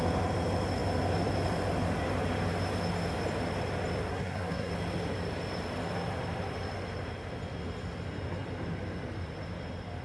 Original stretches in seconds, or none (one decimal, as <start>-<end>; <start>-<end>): 0.0-4.1; 4.7-10.0